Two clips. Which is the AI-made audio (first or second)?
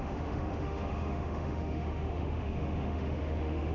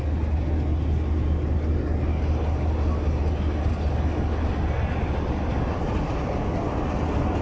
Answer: first